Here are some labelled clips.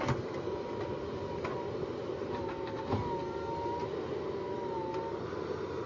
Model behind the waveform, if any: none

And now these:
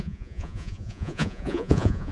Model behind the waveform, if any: vocoder, Vocos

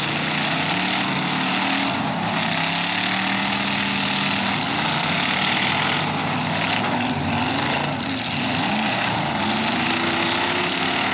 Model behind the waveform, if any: none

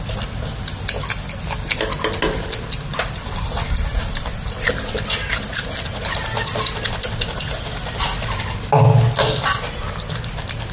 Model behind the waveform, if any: none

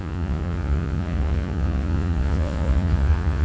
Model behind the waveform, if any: vocoder, Vocos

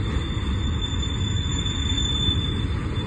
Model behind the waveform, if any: none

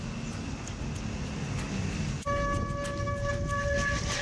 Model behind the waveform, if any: none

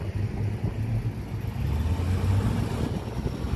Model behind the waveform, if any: none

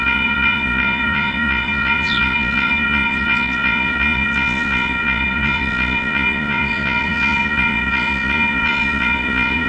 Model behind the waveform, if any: vocoder, Vocos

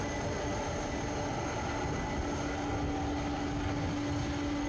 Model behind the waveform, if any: none